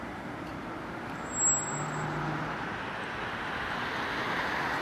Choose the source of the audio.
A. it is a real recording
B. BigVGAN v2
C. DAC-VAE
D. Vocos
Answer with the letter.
A